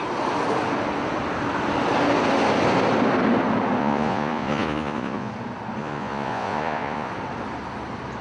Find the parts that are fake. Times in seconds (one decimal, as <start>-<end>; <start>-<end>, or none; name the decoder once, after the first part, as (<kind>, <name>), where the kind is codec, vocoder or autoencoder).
3.8-5.3 (vocoder, Vocos); 5.8-7.1

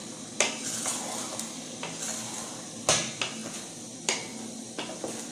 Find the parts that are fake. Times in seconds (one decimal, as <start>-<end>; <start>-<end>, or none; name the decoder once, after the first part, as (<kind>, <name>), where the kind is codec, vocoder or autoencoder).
none

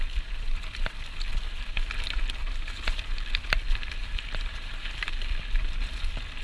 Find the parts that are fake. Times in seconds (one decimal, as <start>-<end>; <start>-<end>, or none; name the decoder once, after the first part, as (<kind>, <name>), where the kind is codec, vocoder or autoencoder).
4.0-5.1 (vocoder, BigVGAN v2)

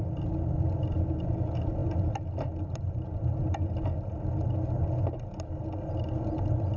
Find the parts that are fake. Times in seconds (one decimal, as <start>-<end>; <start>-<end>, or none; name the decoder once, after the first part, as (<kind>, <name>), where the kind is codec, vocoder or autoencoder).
none